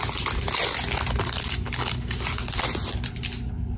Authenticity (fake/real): real